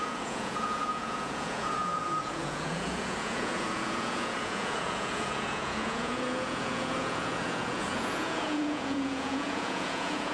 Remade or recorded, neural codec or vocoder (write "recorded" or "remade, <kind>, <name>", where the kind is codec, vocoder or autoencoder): remade, vocoder, Vocos